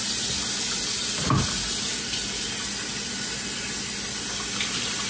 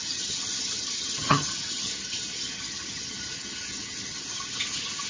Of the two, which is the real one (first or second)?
first